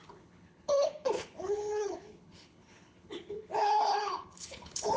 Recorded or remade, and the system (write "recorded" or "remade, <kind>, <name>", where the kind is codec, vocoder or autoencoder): remade, codec, HILCodec